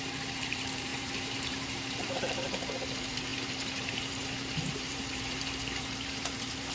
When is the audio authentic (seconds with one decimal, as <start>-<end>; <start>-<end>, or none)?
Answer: none